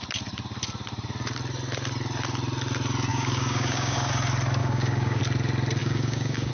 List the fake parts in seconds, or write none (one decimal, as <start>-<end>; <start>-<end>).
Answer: 3.1-4.1; 4.6-5.2; 5.8-6.5